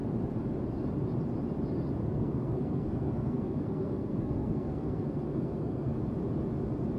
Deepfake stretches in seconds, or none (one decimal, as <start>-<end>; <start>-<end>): 2.0-6.0